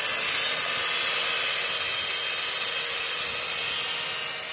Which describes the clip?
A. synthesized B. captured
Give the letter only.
B